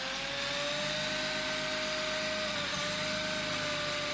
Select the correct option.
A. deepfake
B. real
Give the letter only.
B